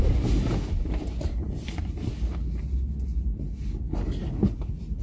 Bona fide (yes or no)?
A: yes